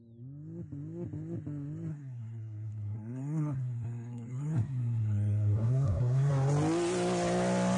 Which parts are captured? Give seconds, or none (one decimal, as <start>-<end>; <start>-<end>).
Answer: 0.0-1.9; 6.3-7.8